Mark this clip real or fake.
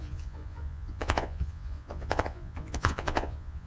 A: fake